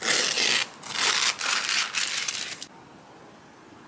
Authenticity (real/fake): real